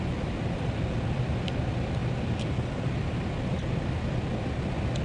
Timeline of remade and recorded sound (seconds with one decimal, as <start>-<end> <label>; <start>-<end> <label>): 0.0-5.0 recorded